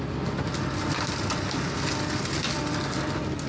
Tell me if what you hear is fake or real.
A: real